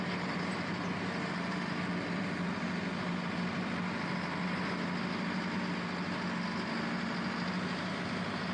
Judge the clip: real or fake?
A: real